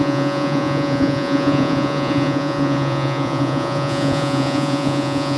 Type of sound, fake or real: fake